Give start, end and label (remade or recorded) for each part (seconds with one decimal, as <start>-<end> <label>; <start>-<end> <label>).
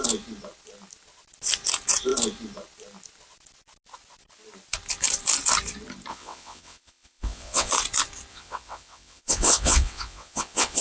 0.0-6.1 recorded; 6.1-7.7 remade; 7.7-8.3 recorded; 8.3-10.8 remade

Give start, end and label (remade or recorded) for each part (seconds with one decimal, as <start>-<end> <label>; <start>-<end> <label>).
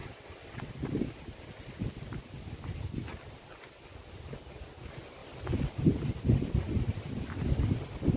0.0-0.7 remade; 0.7-8.2 recorded